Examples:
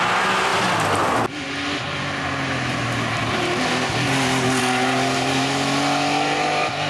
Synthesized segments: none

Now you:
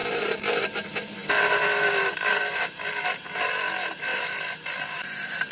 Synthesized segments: 0.0-5.5 (vocoder, BigVGAN v2)